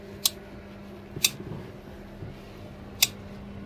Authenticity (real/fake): real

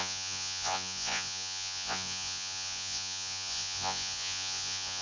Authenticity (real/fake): fake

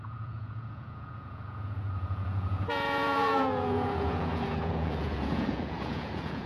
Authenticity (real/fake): fake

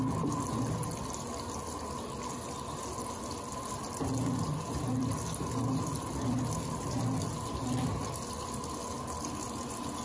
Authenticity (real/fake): real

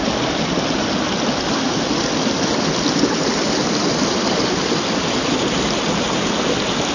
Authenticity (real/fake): real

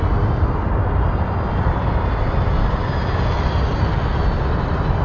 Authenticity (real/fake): real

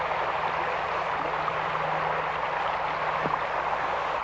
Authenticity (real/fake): real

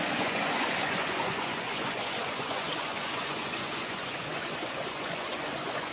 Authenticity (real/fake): fake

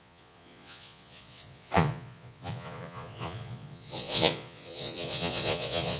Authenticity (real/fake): fake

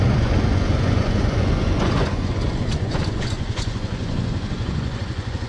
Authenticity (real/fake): fake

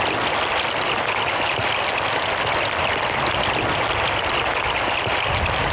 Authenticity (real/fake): real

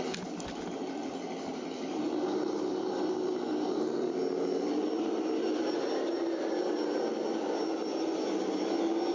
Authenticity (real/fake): real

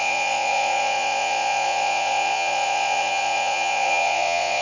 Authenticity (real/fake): fake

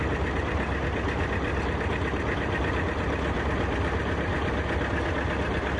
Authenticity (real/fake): real